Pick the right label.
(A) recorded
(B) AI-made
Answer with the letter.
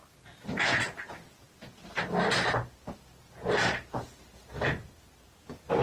A